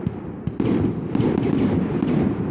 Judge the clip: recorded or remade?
recorded